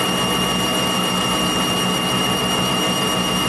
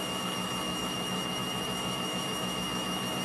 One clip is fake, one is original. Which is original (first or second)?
first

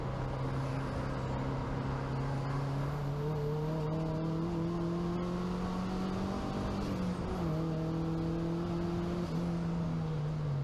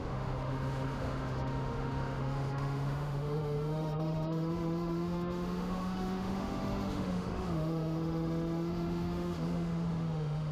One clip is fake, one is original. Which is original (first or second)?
first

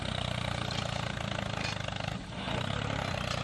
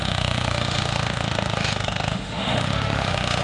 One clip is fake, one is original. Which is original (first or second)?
first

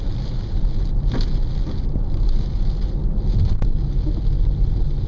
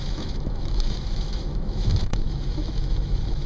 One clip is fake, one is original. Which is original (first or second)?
first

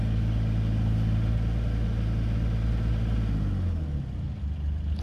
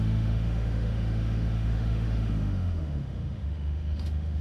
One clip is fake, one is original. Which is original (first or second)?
first